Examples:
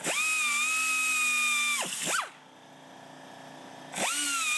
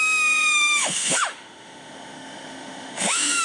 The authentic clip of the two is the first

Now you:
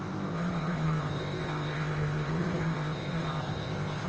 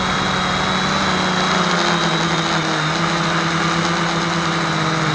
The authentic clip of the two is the second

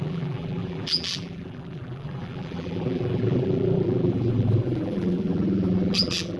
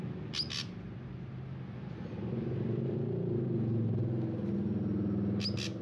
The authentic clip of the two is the second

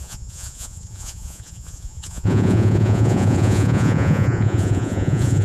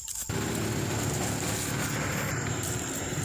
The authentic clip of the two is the second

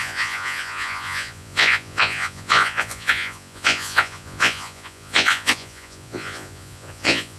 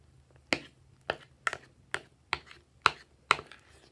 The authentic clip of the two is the second